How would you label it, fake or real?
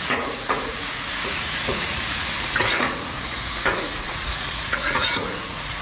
fake